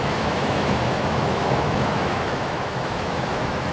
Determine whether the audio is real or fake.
fake